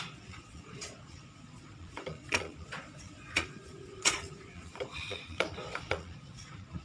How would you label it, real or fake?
fake